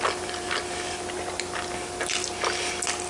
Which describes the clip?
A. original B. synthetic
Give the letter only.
A